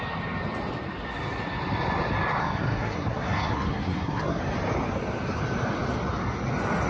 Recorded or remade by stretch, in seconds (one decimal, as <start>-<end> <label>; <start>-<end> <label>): 0.0-2.4 recorded; 2.4-4.4 remade; 4.4-6.9 recorded

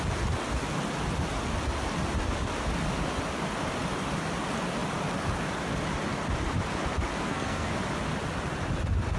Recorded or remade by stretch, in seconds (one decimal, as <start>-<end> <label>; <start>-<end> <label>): 0.0-7.2 recorded; 7.2-7.7 remade; 7.7-9.2 recorded

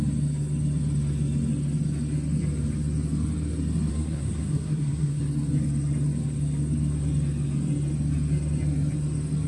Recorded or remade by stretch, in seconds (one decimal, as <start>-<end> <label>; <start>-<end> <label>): 0.0-3.9 recorded; 3.9-5.2 remade; 5.2-9.5 recorded

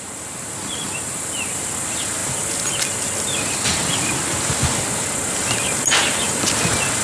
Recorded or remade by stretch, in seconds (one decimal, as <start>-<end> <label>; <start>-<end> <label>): 0.0-7.0 recorded